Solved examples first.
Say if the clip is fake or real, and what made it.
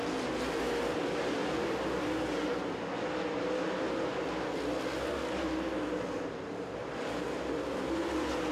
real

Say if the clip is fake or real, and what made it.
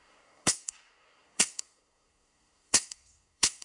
fake, codec, SNAC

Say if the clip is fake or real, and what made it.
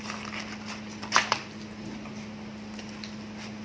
real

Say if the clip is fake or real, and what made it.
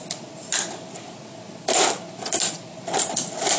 real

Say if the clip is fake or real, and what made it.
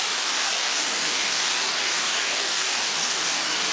fake, codec, DAC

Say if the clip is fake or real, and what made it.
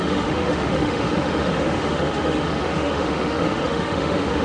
fake, autoencoder, DAC-VAE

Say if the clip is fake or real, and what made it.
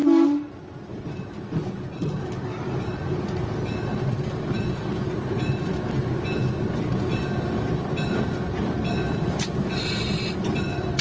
real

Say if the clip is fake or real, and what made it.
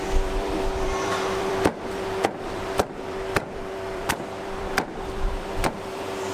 fake, vocoder, BigVGAN v2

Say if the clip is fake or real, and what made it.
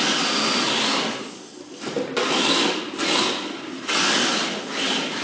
real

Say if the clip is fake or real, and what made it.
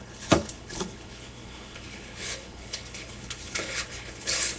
fake, codec, HILCodec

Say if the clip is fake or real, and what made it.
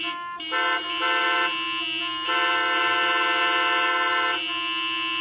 real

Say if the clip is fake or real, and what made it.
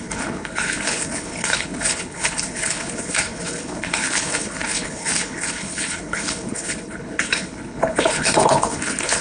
fake, codec, HILCodec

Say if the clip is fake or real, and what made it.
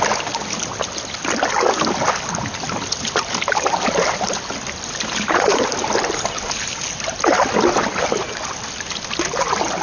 real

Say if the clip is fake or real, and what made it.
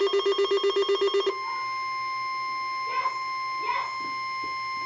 real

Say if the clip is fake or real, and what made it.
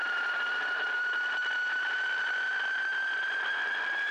real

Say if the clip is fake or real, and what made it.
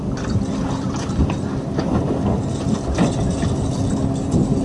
real